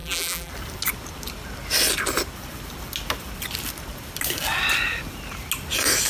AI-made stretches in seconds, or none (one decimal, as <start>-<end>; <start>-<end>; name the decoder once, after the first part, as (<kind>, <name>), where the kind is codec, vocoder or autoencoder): 0.0-0.5 (vocoder, BigVGAN v2)